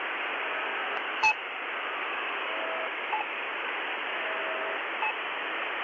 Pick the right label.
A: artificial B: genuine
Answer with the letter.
A